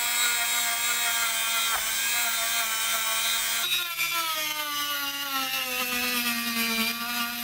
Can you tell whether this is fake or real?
real